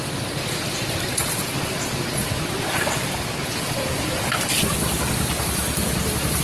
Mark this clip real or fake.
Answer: real